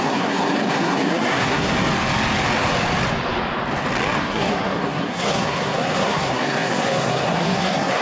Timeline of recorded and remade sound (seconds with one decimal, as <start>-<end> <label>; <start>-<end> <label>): 0.0-1.7 remade; 1.7-4.2 recorded; 4.2-8.0 remade